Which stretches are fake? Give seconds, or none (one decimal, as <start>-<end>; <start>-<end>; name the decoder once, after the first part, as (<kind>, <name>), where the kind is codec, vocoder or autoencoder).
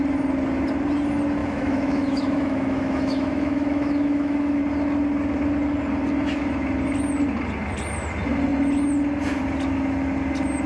1.4-4.6 (autoencoder, DAC-VAE)